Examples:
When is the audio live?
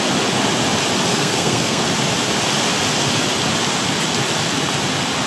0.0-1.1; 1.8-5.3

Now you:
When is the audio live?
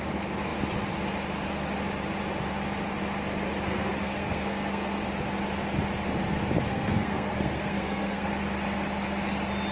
0.0-3.7; 5.0-6.7; 8.3-9.7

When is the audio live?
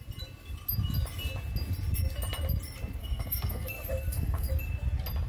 0.0-3.0; 4.5-5.3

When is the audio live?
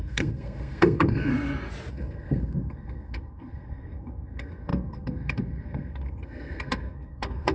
1.3-1.9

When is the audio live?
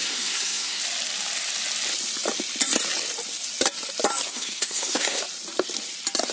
0.8-4.3; 5.2-6.3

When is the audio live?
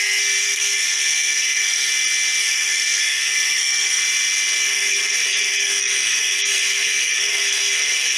0.0-0.4; 1.9-2.4; 4.0-4.6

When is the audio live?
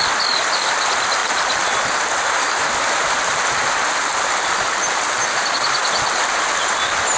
0.0-7.2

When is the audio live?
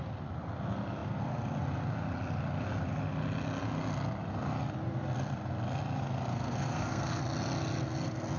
0.0-6.3; 7.2-8.4